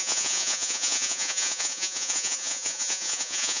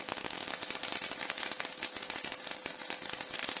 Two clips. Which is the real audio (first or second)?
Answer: second